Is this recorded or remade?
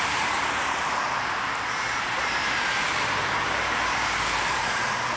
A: remade